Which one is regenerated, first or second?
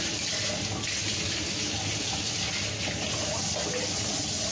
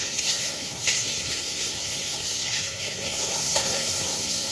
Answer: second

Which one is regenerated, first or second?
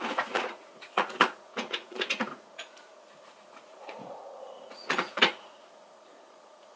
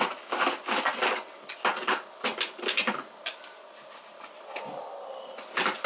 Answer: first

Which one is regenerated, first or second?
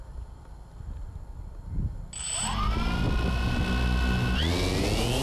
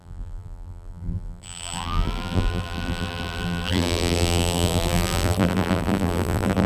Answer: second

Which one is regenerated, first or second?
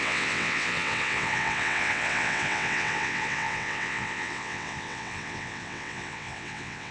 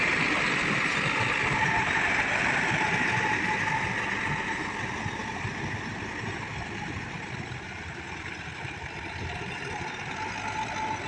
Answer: first